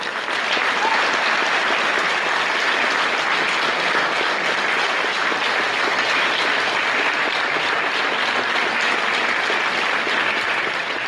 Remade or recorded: recorded